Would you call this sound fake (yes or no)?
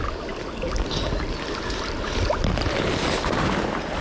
no